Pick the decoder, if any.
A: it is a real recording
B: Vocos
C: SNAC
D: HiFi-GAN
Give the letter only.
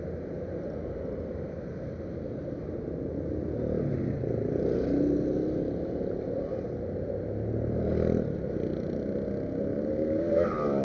A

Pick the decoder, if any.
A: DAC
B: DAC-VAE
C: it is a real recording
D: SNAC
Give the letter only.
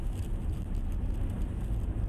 C